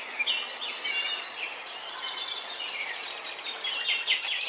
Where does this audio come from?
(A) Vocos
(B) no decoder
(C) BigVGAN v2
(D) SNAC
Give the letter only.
B